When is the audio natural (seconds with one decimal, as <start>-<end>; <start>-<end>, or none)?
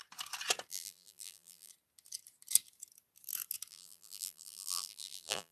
0.0-0.7; 1.7-3.7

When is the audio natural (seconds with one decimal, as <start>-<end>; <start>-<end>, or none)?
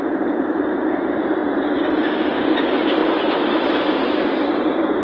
1.4-2.6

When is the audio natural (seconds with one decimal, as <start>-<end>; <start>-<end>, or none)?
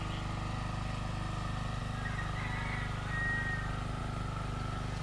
0.0-5.0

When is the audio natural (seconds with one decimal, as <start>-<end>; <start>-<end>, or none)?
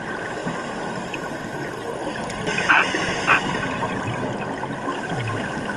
0.0-2.5; 4.2-5.8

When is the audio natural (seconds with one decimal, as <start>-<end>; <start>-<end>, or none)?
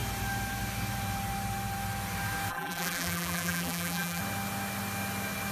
0.0-2.5; 4.2-5.5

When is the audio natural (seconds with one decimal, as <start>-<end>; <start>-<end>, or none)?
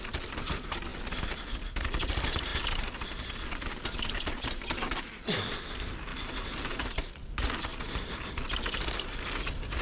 0.9-2.1; 2.5-4.2; 6.1-6.8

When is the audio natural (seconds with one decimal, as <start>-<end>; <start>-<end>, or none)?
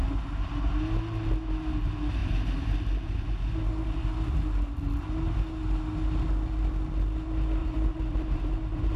0.7-7.6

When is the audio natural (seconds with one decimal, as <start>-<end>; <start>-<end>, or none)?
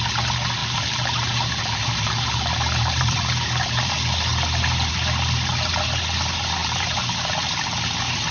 0.0-0.6; 3.9-6.6; 7.4-8.3